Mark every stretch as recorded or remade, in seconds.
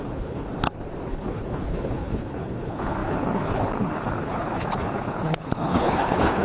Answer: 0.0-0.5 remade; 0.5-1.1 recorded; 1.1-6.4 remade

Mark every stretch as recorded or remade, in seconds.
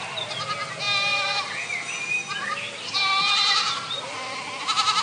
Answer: 0.0-5.0 recorded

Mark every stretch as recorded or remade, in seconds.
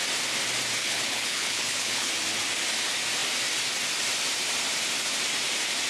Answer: 0.0-0.8 recorded; 0.8-2.1 remade; 2.1-5.9 recorded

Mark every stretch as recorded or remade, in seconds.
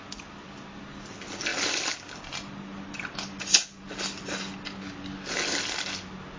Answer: 0.0-6.4 recorded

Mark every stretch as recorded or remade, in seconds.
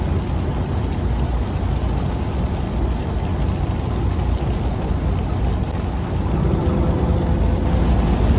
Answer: 0.0-8.4 recorded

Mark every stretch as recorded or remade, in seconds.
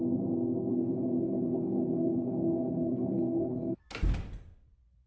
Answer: 0.0-0.7 recorded; 0.7-3.8 remade; 3.8-5.1 recorded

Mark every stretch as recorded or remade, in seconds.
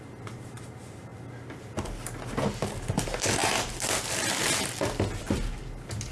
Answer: 0.0-6.1 recorded